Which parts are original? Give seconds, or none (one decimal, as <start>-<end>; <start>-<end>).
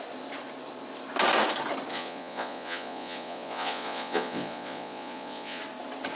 0.0-1.9; 5.6-6.2